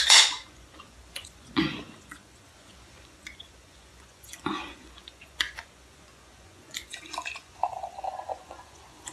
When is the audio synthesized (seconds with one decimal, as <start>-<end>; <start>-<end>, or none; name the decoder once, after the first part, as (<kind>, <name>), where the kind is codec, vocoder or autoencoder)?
0.0-9.1 (vocoder, Vocos)